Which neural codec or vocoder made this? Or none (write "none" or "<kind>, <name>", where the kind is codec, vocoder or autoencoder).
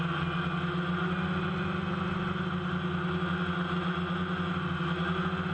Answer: none